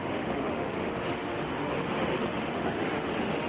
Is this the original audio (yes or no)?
no